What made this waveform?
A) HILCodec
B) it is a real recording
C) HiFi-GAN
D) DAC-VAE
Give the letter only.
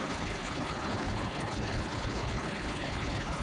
A